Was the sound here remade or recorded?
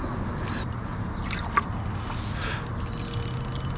recorded